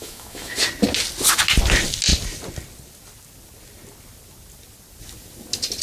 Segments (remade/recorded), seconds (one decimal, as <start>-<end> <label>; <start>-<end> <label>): 0.0-0.6 remade; 0.6-5.8 recorded